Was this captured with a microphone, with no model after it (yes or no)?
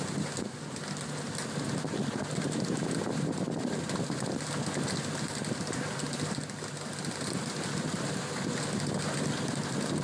yes